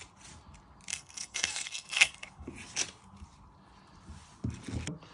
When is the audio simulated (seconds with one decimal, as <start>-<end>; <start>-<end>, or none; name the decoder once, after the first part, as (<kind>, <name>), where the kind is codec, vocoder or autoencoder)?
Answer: 0.9-2.5 (codec, SNAC)